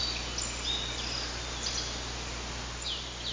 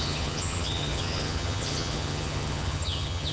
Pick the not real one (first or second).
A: second